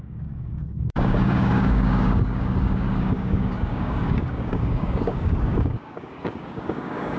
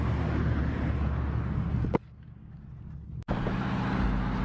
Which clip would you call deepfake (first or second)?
first